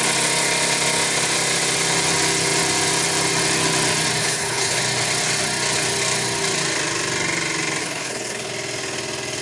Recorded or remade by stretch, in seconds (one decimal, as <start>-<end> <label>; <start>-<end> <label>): 0.0-4.2 recorded; 4.2-4.8 remade; 4.8-7.8 recorded; 7.8-8.5 remade; 8.5-9.4 recorded